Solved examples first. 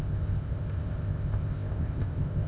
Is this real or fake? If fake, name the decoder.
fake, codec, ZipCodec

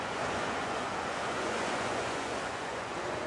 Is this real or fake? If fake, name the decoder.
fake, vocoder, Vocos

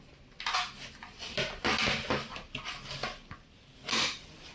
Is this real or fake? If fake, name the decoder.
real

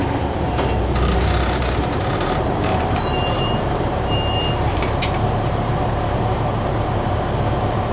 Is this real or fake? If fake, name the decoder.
fake, vocoder, BigVGAN v2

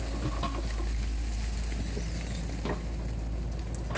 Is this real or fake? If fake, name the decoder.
real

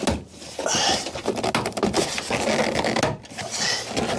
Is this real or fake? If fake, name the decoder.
real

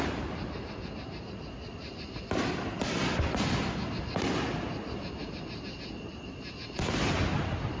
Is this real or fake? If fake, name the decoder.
real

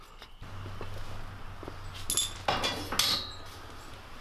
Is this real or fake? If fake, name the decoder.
real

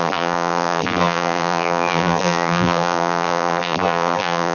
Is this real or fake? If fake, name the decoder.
fake, vocoder, BigVGAN v2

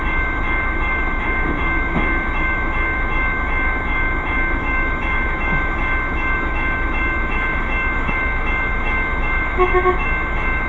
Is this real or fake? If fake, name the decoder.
fake, autoencoder, DAC-VAE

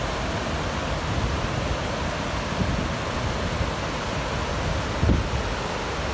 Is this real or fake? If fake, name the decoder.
real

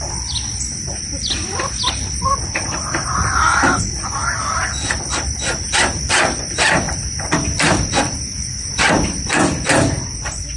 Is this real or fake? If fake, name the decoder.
fake, vocoder, BigVGAN v2